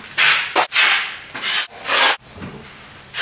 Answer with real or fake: real